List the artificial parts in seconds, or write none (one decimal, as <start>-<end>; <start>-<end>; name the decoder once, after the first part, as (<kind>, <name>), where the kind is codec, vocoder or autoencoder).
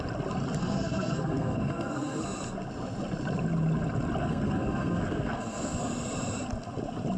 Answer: 0.6-2.2 (codec, SNAC); 4.2-5.8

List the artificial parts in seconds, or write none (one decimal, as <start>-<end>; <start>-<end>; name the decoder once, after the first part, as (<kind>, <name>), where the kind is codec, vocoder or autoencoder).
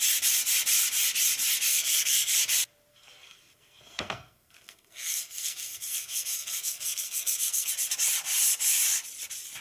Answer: 1.7-2.3 (codec, SNAC); 2.9-7.7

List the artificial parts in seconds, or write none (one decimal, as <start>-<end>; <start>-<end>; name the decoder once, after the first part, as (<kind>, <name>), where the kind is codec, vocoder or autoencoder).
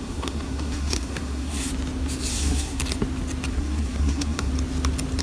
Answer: 0.0-1.7 (codec, SNAC); 2.3-2.8; 3.5-4.5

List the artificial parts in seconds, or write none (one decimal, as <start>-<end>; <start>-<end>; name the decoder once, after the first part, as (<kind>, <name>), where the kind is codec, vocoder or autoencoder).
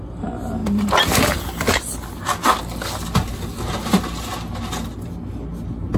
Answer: none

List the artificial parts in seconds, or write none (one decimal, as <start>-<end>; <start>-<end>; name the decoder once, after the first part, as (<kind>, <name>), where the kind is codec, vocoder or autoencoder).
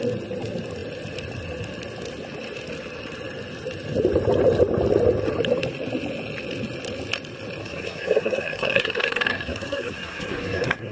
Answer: 7.6-10.9 (codec, SNAC)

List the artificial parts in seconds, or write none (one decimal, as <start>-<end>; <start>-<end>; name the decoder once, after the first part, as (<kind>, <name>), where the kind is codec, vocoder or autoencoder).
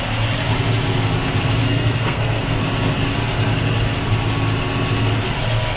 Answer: 1.6-2.6 (codec, SNAC)